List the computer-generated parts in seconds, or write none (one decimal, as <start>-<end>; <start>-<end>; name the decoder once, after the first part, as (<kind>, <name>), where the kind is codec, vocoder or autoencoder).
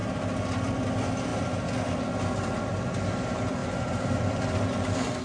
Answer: 0.0-0.9 (vocoder, BigVGAN v2); 3.6-5.2